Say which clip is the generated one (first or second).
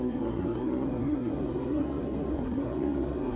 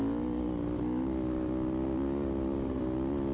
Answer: first